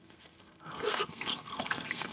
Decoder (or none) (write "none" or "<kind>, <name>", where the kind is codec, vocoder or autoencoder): codec, SNAC